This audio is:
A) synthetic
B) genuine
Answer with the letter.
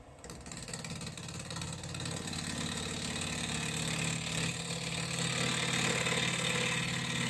B